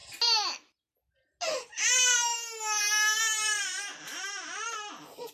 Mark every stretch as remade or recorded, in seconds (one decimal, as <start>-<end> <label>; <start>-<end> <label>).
0.0-5.3 recorded

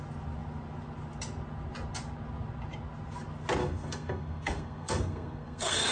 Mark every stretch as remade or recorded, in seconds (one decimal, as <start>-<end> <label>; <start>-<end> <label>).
0.0-3.6 recorded; 3.6-5.9 remade

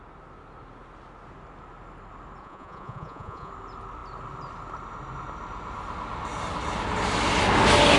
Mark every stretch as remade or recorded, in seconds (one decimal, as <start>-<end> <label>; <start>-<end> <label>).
0.0-2.4 recorded; 2.4-3.5 remade; 3.5-8.0 recorded

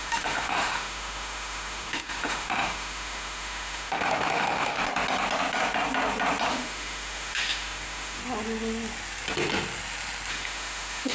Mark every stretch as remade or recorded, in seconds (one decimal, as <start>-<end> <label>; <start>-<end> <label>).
0.0-4.8 remade; 4.8-6.5 recorded; 6.5-8.2 remade; 8.2-10.3 recorded; 10.3-11.1 remade

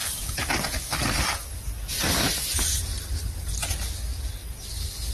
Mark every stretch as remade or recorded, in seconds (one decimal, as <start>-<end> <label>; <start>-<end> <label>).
0.0-5.1 recorded

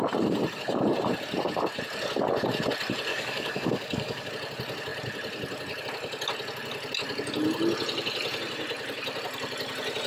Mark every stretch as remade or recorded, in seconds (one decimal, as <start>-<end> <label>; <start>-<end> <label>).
0.0-3.1 recorded; 3.1-4.3 remade; 4.3-10.1 recorded